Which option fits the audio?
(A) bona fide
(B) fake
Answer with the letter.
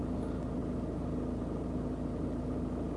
A